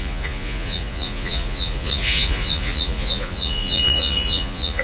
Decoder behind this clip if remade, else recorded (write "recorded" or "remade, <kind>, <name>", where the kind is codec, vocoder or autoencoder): remade, vocoder, Vocos